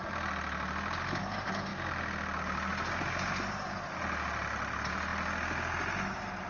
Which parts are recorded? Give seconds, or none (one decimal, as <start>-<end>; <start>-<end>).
0.0-6.5